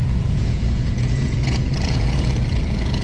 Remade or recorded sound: remade